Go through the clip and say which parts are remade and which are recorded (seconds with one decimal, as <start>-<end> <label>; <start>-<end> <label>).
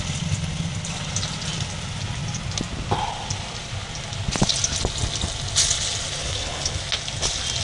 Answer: 0.0-6.2 recorded; 6.2-6.8 remade; 6.8-7.6 recorded